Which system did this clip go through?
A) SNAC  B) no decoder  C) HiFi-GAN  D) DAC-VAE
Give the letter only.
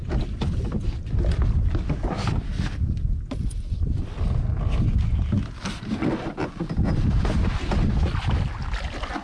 B